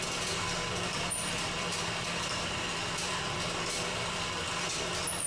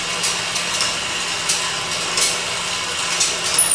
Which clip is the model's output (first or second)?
first